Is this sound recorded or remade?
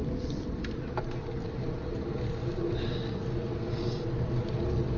recorded